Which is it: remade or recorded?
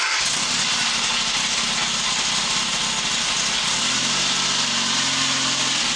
recorded